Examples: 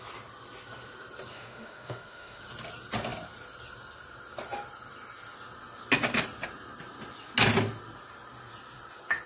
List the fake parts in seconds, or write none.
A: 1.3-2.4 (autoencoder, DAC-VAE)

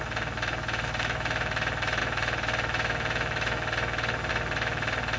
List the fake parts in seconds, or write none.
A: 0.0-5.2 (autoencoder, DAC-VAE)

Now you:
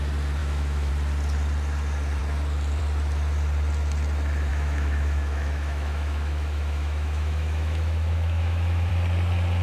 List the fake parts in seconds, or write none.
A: 0.4-0.9 (autoencoder, DAC-VAE); 4.5-8.9

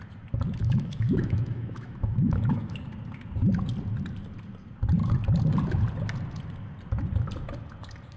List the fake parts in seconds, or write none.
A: 0.6-2.9 (autoencoder, DAC-VAE)